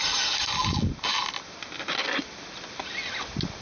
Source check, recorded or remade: recorded